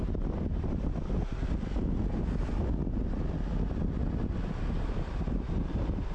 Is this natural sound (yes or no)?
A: yes